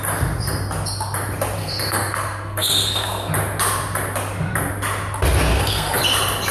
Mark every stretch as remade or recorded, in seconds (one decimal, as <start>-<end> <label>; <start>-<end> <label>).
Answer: 0.0-1.6 recorded; 1.6-3.3 remade; 3.3-5.5 recorded; 5.5-6.0 remade; 6.0-6.5 recorded